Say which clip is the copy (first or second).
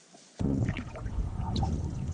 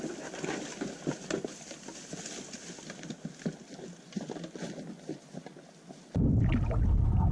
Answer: first